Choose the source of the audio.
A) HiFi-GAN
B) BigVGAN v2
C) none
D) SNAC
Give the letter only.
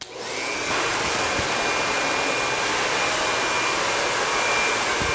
C